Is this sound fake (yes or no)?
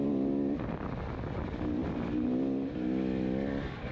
no